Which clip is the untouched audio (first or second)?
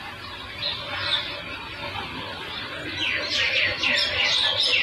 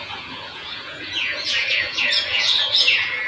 first